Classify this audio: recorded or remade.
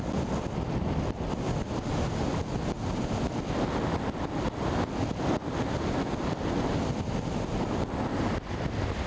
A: recorded